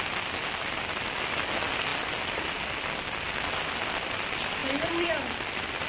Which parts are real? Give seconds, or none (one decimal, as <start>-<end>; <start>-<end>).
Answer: 0.0-4.6; 5.1-5.9